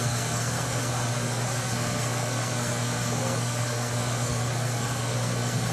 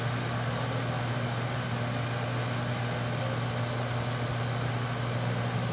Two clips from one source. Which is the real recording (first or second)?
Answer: second